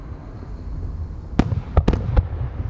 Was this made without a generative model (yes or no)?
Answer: yes